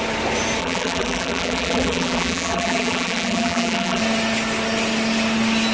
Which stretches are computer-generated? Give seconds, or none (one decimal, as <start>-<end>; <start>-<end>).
0.6-4.0